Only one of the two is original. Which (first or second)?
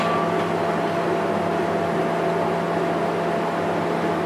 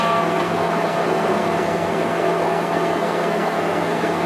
first